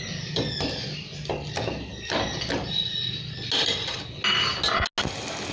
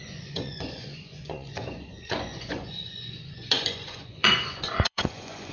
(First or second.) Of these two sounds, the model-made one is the second